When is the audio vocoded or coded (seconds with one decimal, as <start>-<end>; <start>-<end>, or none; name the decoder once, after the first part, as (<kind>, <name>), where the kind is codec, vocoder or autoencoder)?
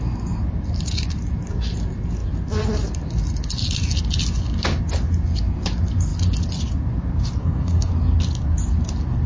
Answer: 7.4-7.9 (codec, DAC)